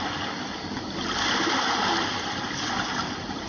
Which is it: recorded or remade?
recorded